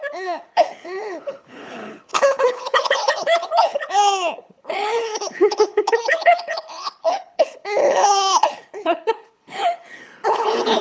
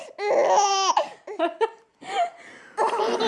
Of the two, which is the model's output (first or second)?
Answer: first